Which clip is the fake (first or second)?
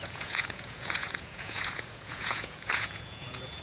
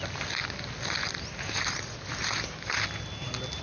first